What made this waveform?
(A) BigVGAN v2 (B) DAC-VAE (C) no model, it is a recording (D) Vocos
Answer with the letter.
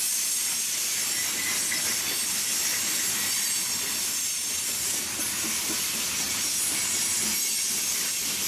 C